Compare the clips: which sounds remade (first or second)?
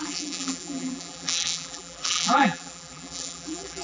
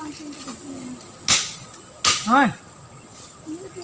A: first